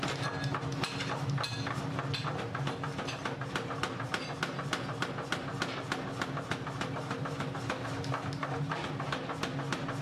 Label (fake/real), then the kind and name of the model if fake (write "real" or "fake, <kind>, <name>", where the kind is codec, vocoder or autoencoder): real